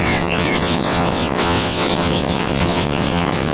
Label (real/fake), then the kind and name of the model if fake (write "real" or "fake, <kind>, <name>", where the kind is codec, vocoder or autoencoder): fake, vocoder, WaveNeXt